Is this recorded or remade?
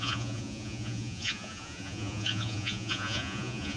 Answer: remade